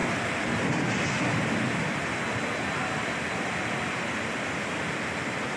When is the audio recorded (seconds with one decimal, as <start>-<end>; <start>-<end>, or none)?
0.0-1.2

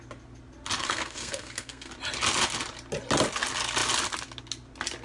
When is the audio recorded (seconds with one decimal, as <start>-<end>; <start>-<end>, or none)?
0.0-0.8; 1.9-5.0

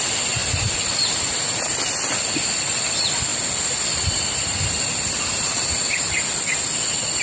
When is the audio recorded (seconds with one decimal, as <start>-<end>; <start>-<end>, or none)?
0.0-7.2

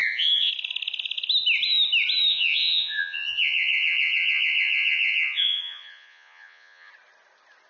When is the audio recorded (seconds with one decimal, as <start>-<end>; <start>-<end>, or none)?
0.5-2.3; 6.9-7.7

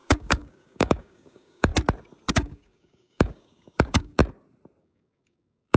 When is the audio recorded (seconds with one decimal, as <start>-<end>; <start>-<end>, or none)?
1.7-2.3; 4.2-4.8